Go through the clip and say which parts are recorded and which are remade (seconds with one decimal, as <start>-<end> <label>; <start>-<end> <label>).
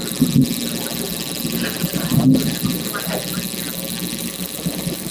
0.0-4.2 recorded; 4.2-5.1 remade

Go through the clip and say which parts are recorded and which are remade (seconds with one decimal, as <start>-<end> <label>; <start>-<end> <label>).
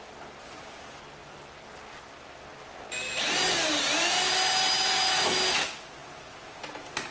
0.0-7.1 recorded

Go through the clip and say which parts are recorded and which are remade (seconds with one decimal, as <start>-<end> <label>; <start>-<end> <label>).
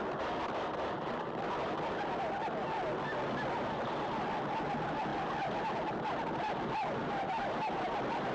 0.0-8.3 recorded